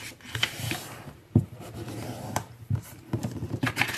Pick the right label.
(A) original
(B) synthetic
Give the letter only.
B